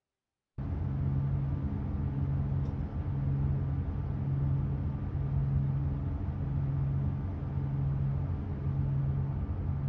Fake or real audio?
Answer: real